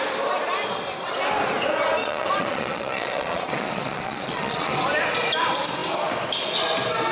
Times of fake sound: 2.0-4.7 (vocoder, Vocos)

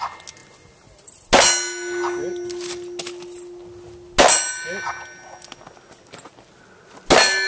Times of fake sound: none

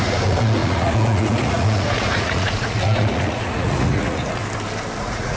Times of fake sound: 0.0-4.4 (vocoder, Vocos); 5.0-5.4

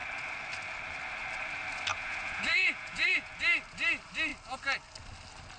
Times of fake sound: 1.9-3.4 (vocoder, Vocos)

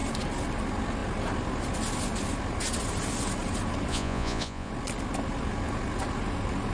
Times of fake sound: 3.9-4.7 (vocoder, Vocos)

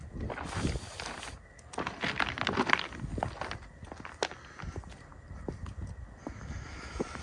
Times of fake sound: none

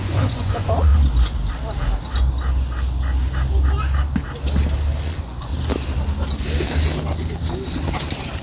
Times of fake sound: 0.0-0.9 (vocoder, Vocos); 5.0-5.5